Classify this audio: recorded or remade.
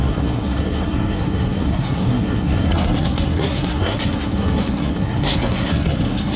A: remade